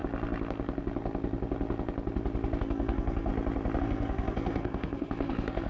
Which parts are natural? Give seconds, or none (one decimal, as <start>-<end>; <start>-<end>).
0.0-2.6; 3.3-3.8

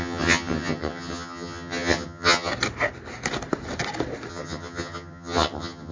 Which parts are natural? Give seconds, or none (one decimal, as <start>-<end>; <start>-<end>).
2.5-4.3

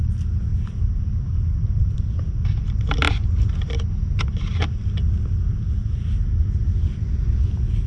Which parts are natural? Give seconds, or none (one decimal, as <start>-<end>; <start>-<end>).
0.0-7.9

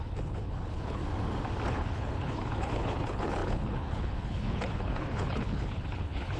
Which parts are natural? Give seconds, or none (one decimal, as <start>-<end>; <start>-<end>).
1.0-1.7